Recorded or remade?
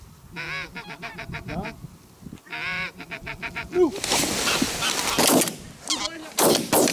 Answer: recorded